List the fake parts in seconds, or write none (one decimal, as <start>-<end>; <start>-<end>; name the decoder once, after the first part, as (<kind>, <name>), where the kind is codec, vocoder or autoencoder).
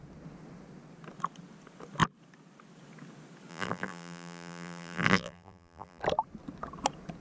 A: 3.5-6.0 (vocoder, BigVGAN v2)